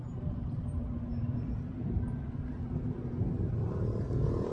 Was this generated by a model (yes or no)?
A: no